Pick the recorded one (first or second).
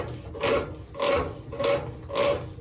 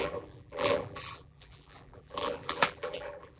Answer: first